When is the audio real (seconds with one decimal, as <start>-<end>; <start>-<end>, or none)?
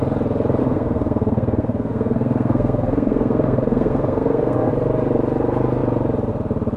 0.0-0.6; 4.7-6.8